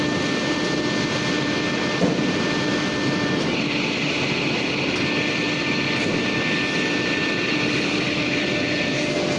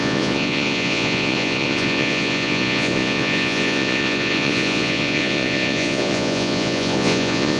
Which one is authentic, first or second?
first